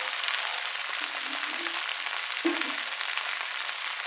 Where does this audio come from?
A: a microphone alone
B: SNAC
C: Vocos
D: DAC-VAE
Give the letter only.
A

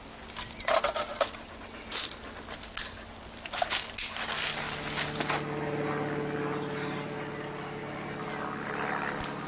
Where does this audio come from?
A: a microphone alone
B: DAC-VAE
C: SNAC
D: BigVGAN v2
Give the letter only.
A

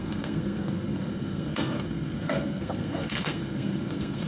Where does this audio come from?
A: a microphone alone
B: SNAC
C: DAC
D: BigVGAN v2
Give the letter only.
B